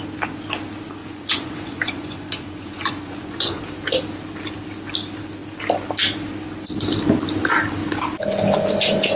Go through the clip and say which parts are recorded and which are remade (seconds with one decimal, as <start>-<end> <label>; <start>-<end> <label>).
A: 0.0-1.0 recorded; 1.0-3.6 remade; 3.6-9.2 recorded

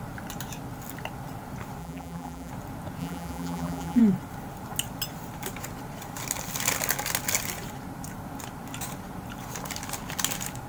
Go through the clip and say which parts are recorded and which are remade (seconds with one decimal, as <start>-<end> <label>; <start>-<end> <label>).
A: 0.0-1.8 recorded; 1.8-2.5 remade; 2.5-3.0 recorded; 3.0-4.0 remade; 4.0-10.7 recorded

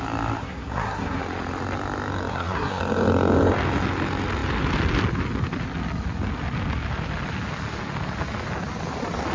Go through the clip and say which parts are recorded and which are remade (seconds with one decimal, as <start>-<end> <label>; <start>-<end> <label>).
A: 0.0-0.4 recorded; 0.4-1.2 remade; 1.2-2.3 recorded; 2.3-2.8 remade; 2.8-9.3 recorded